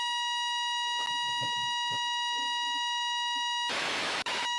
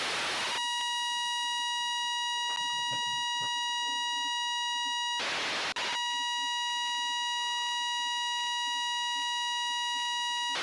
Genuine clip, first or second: second